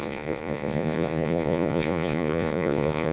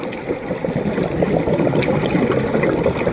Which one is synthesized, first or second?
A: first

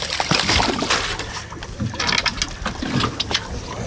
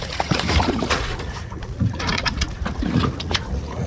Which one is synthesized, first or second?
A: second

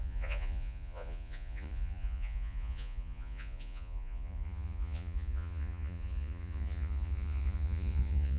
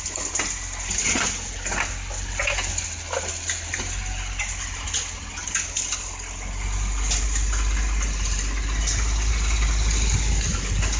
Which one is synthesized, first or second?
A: first